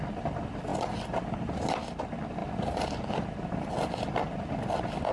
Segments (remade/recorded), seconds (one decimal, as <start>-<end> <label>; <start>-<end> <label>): 0.0-5.1 recorded